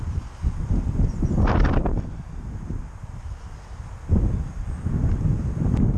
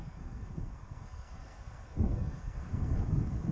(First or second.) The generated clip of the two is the second